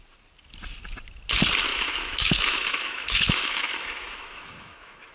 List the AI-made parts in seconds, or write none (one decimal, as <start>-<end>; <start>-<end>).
1.7-5.1